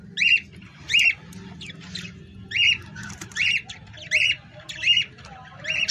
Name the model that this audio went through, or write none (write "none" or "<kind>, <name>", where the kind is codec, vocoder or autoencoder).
none